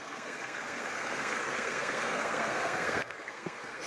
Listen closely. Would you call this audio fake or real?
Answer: fake